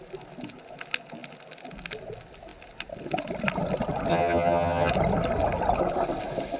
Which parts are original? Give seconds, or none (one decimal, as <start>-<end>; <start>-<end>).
0.0-4.1; 4.9-6.6